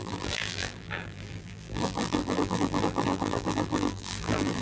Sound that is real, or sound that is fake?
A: fake